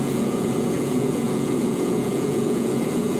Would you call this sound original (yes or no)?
no